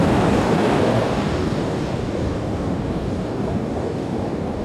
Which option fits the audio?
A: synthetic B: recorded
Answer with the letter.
A